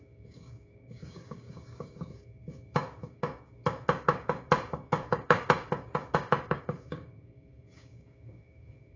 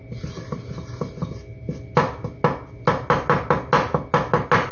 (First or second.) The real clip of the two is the second